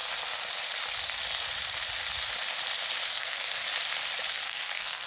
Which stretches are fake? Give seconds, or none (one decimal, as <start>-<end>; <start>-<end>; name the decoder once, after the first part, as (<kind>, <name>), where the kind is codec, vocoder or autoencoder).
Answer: 3.1-3.7 (codec, SNAC); 4.3-5.1